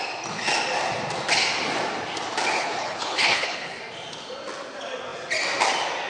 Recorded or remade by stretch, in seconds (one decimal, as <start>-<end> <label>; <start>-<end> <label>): 0.0-2.6 recorded; 2.6-3.8 remade; 3.8-6.1 recorded